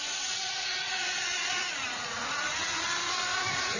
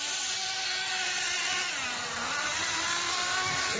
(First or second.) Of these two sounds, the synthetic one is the first